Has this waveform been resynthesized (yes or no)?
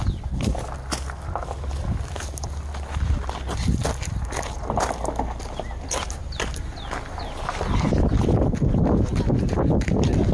no